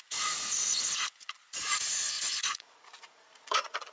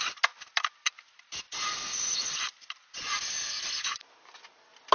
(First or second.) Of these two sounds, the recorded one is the second